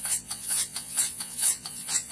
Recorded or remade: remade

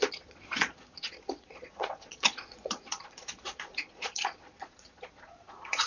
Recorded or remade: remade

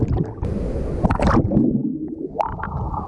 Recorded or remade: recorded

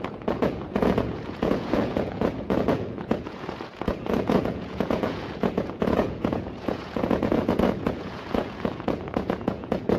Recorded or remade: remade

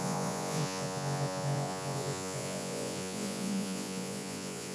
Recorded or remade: remade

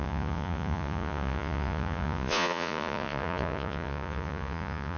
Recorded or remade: remade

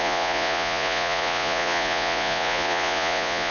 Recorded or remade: remade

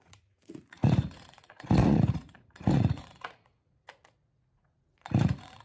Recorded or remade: remade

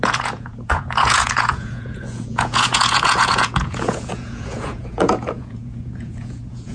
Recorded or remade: remade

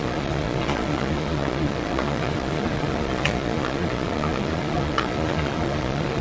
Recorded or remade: remade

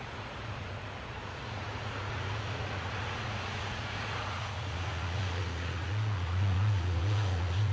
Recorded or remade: remade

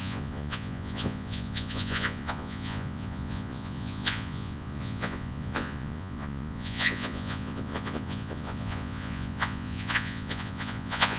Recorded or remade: remade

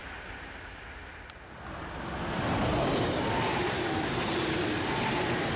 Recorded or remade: recorded